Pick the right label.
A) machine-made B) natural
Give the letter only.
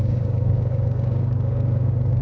A